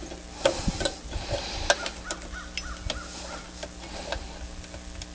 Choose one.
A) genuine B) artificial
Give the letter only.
A